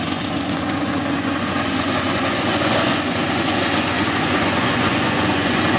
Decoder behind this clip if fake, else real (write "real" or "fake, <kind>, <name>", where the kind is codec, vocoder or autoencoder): fake, vocoder, Vocos